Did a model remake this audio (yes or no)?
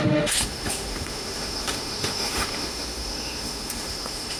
yes